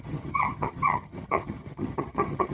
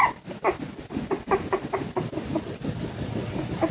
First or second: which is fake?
first